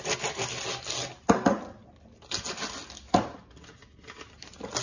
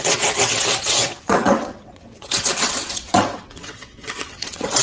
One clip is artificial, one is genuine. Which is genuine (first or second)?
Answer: first